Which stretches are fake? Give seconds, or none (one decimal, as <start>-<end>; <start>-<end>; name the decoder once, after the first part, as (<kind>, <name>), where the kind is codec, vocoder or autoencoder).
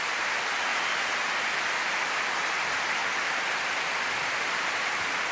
none